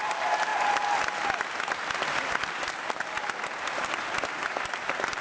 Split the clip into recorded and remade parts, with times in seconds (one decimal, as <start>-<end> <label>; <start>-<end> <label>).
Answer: 0.0-5.2 recorded